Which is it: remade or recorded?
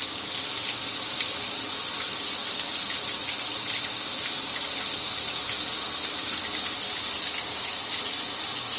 recorded